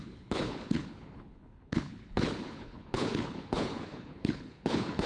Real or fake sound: fake